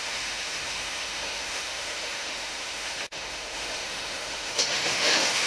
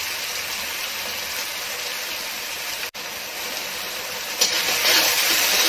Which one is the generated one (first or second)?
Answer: first